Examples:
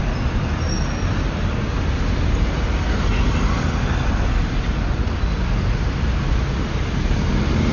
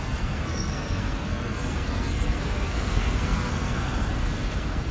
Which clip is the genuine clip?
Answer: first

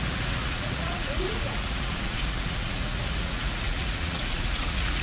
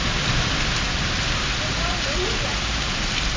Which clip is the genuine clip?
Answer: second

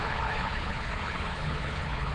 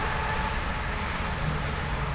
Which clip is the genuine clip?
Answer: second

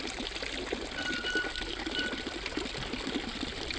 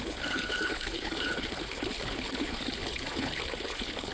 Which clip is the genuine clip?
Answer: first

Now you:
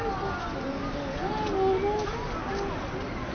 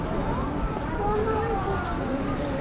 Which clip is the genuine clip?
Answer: first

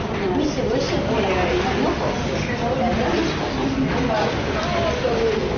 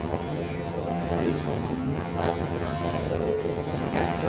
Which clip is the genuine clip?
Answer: first